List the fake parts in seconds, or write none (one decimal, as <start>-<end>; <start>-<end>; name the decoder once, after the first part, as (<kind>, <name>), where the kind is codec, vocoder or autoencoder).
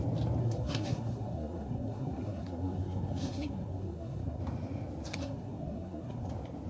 0.4-4.4 (codec, SNAC); 5.1-6.3